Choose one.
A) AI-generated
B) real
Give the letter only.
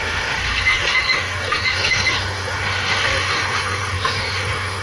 A